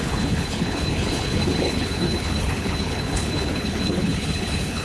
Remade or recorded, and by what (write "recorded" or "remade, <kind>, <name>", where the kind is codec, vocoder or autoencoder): remade, codec, HILCodec